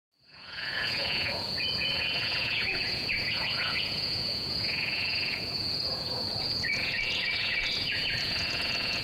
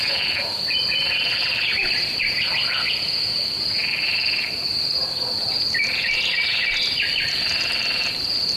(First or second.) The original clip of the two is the second